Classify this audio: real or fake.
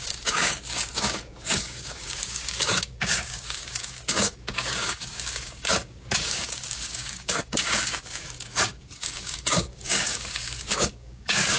fake